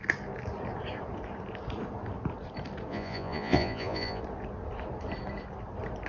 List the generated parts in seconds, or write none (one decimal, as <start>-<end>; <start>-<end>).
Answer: 2.9-4.2

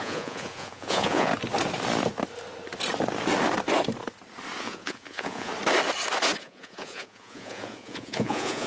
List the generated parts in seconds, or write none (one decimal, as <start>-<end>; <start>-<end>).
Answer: 0.0-1.3; 4.6-5.5; 6.4-8.7

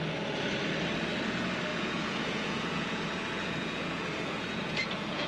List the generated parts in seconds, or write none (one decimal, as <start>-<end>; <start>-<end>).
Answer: 1.7-5.3